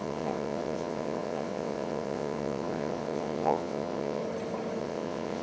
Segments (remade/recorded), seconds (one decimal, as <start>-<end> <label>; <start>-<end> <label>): 0.0-4.2 remade; 4.2-4.8 recorded; 4.8-5.4 remade